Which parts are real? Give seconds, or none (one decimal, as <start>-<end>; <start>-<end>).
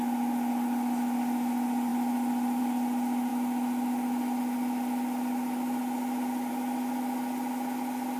0.0-8.2